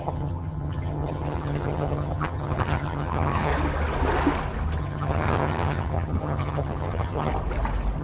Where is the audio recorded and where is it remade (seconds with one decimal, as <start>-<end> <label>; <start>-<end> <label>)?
0.0-3.5 remade; 3.5-4.8 recorded; 4.8-7.3 remade; 7.3-8.0 recorded